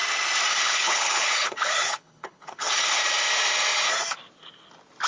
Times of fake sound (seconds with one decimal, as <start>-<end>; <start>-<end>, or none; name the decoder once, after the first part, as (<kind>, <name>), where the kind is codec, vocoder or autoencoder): 0.5-3.0 (codec, HILCodec)